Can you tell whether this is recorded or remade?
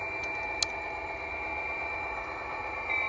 recorded